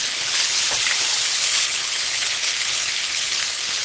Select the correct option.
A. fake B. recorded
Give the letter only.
A